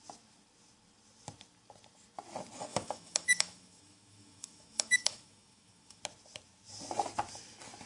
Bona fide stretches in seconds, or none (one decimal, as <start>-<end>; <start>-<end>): 0.0-2.7; 6.0-7.9